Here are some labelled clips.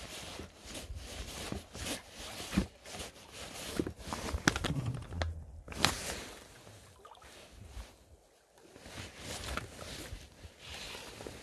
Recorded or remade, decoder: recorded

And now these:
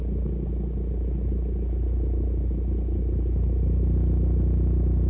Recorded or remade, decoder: recorded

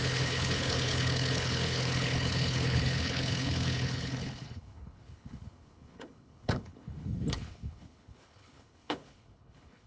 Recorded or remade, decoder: remade, codec, HILCodec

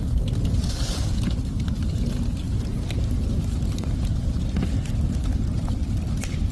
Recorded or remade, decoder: recorded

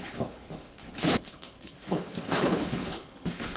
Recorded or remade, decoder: remade, codec, HILCodec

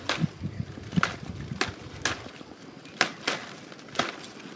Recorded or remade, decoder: recorded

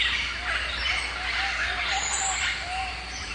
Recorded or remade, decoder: recorded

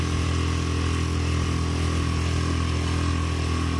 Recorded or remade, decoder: recorded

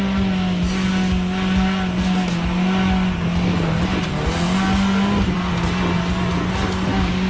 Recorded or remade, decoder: recorded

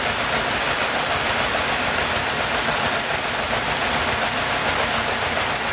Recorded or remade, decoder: recorded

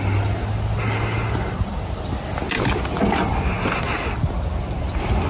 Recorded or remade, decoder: recorded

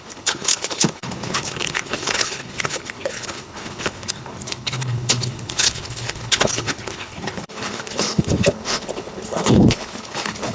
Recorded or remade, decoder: remade, codec, HILCodec